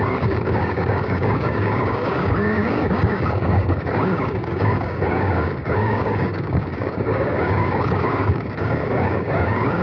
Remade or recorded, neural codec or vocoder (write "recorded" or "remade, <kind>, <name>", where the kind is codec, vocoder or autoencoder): remade, codec, DAC